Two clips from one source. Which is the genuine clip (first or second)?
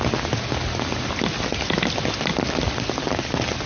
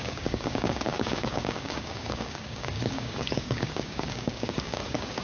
first